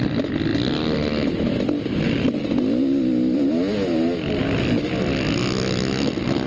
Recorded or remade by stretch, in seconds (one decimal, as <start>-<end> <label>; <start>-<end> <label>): 0.0-6.5 recorded